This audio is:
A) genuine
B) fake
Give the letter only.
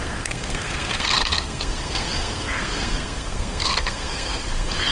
B